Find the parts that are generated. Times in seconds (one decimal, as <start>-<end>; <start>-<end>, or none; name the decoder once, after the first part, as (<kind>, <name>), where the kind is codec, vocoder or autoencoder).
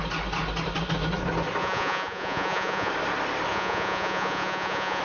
1.6-2.9 (vocoder, Vocos); 3.5-5.0